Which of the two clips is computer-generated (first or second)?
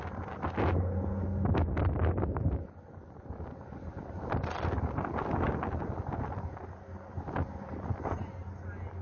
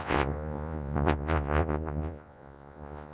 second